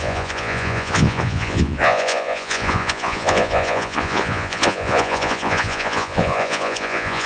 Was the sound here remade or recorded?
remade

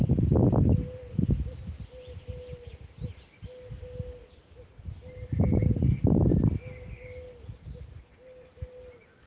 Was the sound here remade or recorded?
recorded